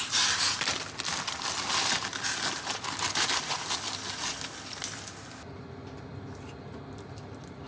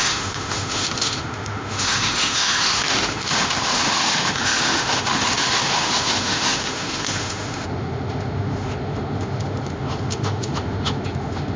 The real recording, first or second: first